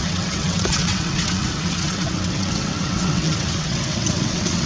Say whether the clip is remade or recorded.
remade